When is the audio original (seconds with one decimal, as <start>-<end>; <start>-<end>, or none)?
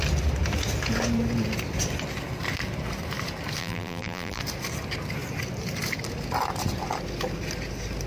0.0-3.6; 4.4-8.1